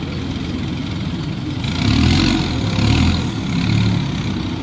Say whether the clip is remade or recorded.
recorded